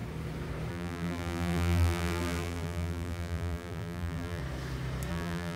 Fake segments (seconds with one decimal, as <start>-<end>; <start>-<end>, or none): 0.7-4.4; 5.1-5.6